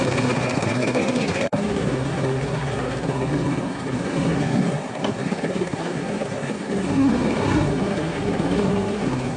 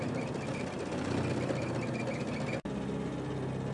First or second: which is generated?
first